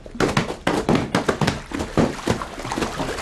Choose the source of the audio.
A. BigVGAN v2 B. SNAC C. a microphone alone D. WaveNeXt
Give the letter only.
C